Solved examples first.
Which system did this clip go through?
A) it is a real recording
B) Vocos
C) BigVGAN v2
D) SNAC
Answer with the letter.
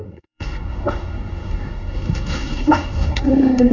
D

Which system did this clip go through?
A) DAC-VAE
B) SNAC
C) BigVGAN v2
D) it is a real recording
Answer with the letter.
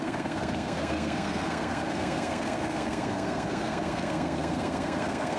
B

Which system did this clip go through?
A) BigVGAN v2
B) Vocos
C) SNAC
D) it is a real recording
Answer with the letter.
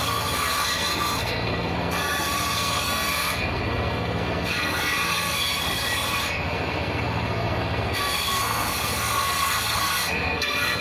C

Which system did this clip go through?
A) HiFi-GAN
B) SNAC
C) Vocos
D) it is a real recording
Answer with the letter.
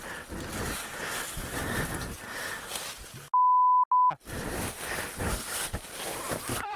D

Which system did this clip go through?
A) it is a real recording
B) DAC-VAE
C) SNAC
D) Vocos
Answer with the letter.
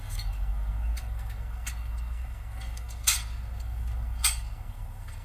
C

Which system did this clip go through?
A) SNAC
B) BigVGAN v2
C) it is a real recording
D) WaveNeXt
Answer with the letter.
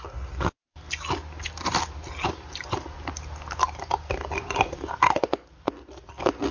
C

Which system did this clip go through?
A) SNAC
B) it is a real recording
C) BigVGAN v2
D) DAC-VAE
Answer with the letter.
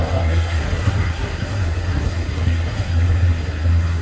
A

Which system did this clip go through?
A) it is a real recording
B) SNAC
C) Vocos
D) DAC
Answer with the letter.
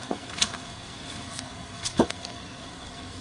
B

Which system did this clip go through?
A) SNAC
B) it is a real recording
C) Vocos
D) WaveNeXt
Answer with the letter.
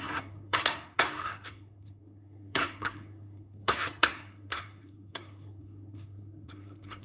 A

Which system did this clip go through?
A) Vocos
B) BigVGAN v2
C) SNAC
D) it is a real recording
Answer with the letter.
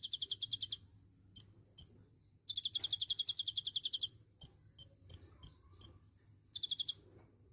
D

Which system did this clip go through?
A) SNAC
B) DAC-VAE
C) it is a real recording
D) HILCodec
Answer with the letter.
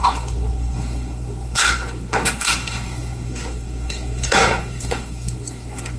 A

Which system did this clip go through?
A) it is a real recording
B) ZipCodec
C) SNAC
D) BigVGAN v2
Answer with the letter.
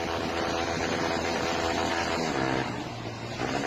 A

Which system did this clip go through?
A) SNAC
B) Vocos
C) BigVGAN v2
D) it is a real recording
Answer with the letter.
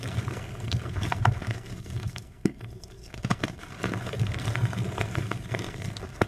A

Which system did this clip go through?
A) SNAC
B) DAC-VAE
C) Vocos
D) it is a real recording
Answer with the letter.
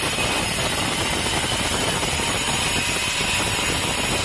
D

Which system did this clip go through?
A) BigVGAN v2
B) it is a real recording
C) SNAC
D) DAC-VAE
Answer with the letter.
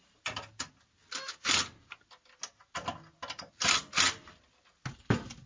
B